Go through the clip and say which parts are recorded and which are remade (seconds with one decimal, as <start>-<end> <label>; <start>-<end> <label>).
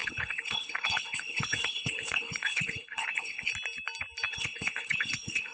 0.0-3.5 remade; 3.5-4.3 recorded; 4.3-5.5 remade